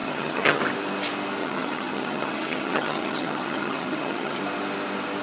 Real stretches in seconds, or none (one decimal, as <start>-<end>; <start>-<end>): 0.6-1.4; 4.4-5.2